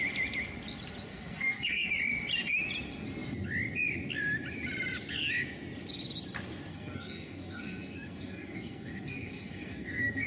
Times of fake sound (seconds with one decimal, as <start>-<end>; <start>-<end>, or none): 1.1-1.9; 6.7-10.3

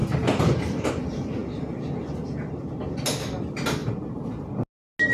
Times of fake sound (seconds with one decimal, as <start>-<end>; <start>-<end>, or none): 0.0-0.9; 3.8-4.5

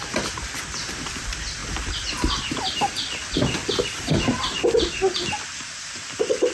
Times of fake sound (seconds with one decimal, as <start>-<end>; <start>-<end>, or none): none

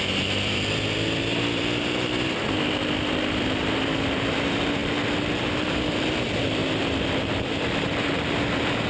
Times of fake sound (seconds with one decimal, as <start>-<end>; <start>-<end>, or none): 0.0-4.8; 5.4-8.9

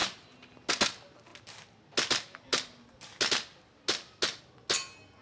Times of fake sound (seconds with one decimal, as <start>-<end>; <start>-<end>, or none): none

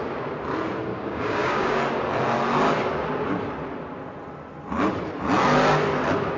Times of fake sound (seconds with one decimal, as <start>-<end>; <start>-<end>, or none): 0.9-1.8

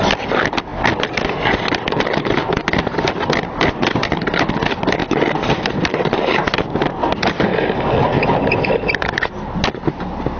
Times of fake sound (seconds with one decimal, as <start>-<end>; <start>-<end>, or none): none